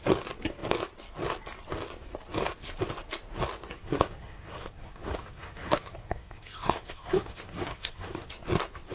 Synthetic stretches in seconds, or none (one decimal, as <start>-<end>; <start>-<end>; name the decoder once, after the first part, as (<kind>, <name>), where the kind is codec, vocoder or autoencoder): 3.8-8.3 (codec, SNAC)